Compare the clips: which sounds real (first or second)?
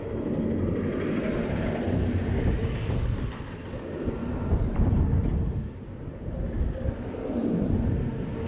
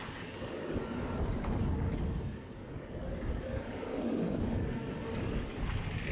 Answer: first